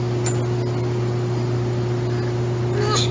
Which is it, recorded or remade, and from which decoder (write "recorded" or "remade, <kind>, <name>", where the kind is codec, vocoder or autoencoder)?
recorded